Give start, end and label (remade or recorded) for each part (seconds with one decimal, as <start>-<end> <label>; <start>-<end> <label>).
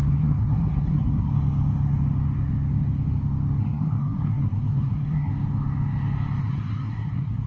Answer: 0.0-1.3 remade; 1.3-3.6 recorded; 3.6-5.3 remade; 5.3-6.4 recorded; 6.4-7.5 remade